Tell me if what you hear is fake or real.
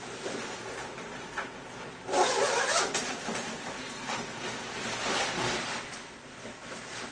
real